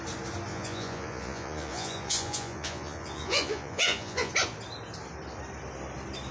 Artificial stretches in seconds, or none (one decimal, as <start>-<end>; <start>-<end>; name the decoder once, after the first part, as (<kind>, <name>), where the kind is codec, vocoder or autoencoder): 0.5-4.3 (vocoder, Vocos)